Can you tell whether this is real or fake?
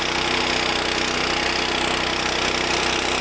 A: real